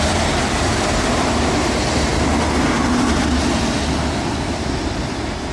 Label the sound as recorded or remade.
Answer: recorded